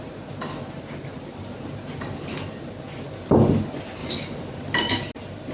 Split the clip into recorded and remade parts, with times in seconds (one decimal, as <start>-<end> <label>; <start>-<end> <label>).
0.0-1.1 recorded; 1.1-3.4 remade; 3.4-4.0 recorded; 4.0-4.9 remade; 4.9-5.5 recorded